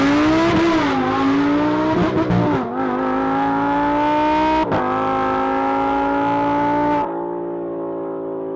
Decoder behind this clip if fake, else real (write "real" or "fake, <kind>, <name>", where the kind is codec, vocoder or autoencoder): real